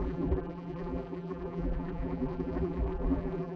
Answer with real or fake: fake